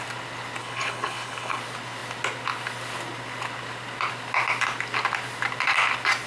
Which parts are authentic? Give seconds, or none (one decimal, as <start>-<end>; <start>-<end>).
0.0-0.6; 1.6-6.3